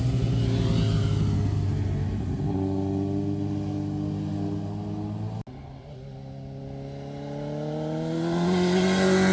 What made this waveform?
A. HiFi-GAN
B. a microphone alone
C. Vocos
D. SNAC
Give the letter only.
B